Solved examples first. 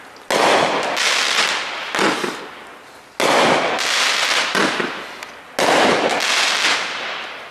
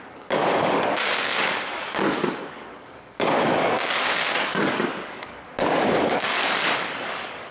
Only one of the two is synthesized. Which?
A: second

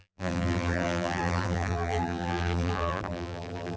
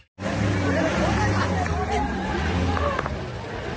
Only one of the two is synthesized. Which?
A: first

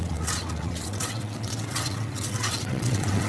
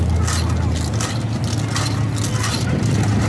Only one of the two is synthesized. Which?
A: first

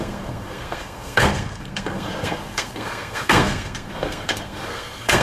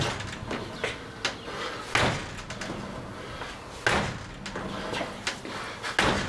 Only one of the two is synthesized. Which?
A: first